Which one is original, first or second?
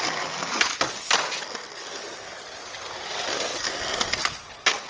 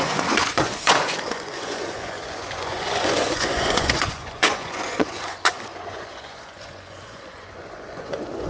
first